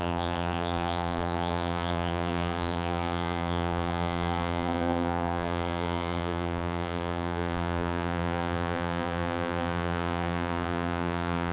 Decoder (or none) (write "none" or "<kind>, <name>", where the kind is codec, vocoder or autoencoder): vocoder, BigVGAN v2